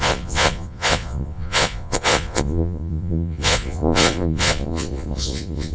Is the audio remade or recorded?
remade